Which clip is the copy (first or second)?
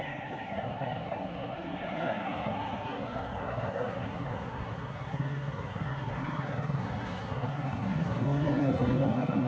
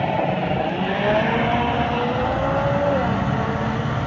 first